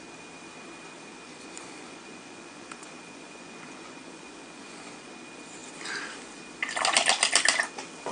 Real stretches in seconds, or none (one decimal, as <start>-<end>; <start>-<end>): 0.0-1.1; 5.1-8.1